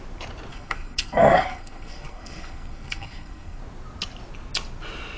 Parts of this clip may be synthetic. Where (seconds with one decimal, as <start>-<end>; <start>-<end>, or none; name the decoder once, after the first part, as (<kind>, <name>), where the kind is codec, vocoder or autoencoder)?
0.5-3.6 (codec, SNAC)